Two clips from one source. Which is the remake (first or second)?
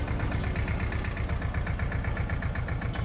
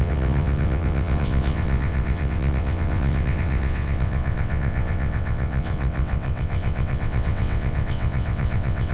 second